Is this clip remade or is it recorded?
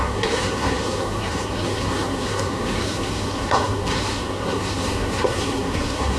remade